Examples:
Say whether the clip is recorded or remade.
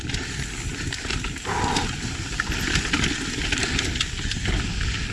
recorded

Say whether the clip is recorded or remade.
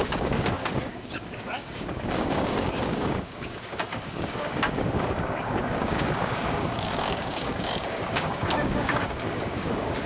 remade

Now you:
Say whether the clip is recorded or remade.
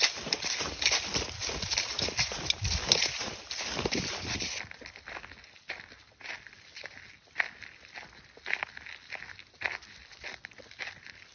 recorded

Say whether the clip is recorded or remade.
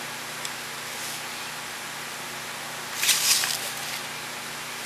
recorded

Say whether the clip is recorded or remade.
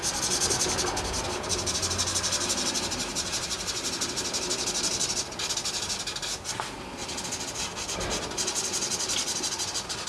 recorded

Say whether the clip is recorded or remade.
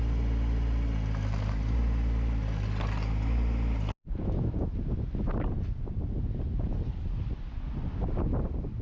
recorded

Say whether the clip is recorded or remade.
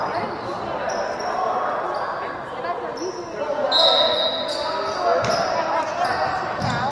recorded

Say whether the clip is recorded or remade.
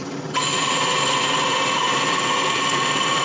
recorded